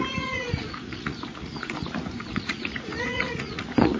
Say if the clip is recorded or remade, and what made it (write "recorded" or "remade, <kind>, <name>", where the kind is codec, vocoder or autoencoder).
remade, vocoder, Vocos